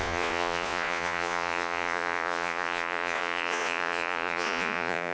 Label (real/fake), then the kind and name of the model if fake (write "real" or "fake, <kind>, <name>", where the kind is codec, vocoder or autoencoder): fake, vocoder, Vocos